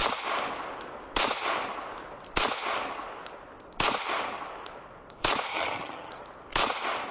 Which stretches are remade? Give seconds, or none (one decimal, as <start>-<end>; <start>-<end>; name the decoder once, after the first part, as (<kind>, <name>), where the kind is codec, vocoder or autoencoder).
5.5-6.1 (vocoder, HiFi-GAN)